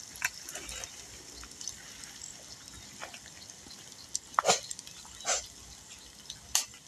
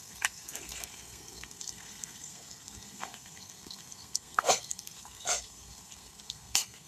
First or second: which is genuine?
first